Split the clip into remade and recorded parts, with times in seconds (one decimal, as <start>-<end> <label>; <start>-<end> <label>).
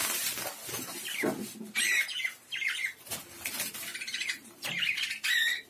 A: 0.0-3.1 remade; 3.1-3.9 recorded; 3.9-4.7 remade; 4.7-5.7 recorded